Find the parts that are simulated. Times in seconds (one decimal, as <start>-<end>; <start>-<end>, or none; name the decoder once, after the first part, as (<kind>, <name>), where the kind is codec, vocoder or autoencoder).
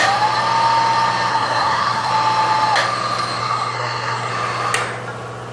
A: 1.3-2.1 (codec, SNAC); 3.4-4.3